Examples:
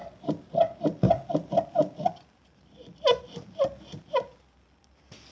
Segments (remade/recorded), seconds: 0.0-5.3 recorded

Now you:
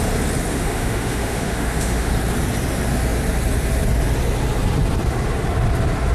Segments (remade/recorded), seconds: 0.0-0.5 recorded; 0.5-2.1 remade; 2.1-6.1 recorded